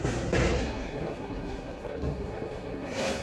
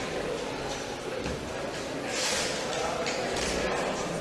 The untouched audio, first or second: second